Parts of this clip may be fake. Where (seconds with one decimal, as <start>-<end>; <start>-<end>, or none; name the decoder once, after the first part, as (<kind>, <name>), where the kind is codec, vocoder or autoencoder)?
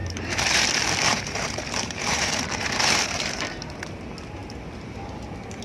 0.0-0.7 (vocoder, BigVGAN v2); 1.1-3.8